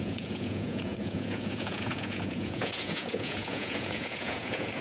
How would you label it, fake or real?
fake